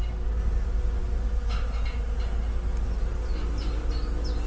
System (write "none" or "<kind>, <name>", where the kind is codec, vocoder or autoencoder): none